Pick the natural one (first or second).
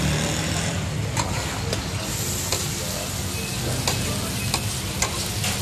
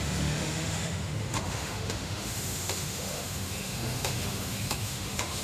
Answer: first